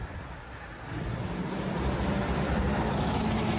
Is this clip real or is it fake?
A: real